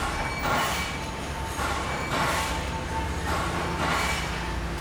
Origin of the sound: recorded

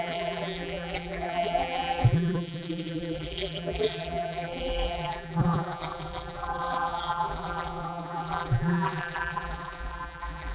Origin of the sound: remade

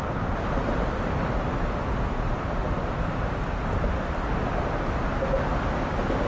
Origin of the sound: recorded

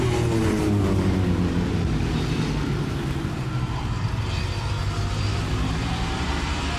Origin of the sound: remade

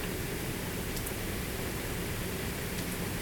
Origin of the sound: recorded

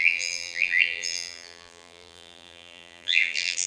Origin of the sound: remade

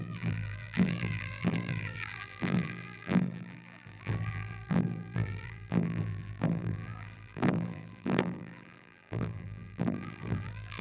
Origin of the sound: remade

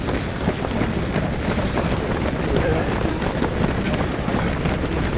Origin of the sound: recorded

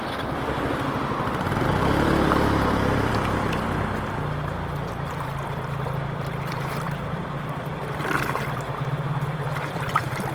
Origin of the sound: remade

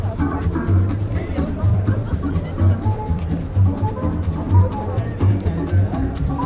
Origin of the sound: remade